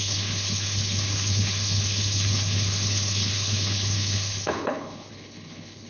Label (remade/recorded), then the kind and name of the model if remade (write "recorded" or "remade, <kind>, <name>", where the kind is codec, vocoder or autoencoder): remade, codec, HILCodec